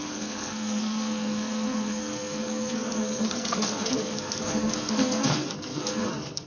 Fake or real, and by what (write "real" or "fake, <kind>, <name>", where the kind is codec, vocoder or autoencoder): fake, codec, SNAC